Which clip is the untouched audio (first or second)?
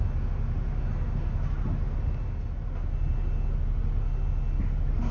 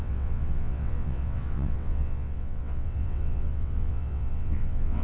first